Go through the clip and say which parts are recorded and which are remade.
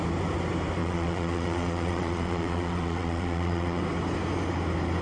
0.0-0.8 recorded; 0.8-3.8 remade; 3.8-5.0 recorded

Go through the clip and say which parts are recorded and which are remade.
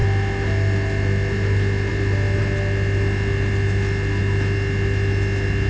0.0-5.7 recorded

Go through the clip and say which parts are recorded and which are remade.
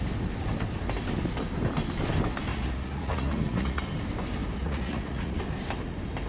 0.0-2.5 recorded; 2.5-3.8 remade; 3.8-4.6 recorded; 4.6-5.4 remade; 5.4-6.3 recorded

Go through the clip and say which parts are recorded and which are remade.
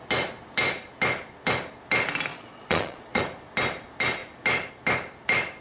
0.0-2.3 recorded; 2.3-3.2 remade; 3.2-5.6 recorded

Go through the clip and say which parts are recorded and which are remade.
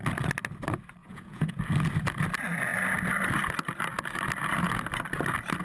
0.0-1.0 recorded; 1.0-1.6 remade; 1.6-5.6 recorded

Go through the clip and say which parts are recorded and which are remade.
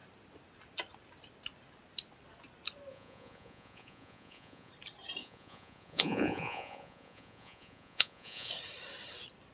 0.0-2.9 recorded; 2.9-4.7 remade; 4.7-5.2 recorded; 5.2-8.5 remade; 8.5-9.5 recorded